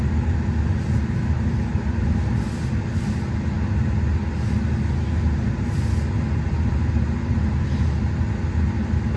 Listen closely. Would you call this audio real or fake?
real